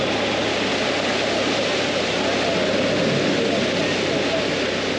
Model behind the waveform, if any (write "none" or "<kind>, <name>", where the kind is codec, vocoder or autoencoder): none